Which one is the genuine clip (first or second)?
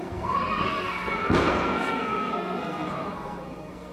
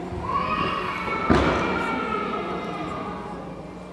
second